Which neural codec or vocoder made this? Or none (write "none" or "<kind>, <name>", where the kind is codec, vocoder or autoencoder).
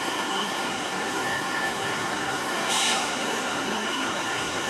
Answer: codec, SNAC